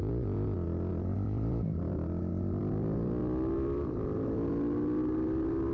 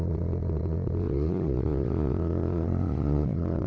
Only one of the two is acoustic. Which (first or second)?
first